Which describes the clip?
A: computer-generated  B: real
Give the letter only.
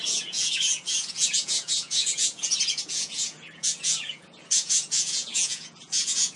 A